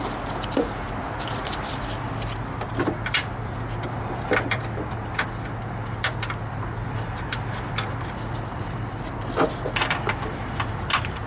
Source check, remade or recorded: remade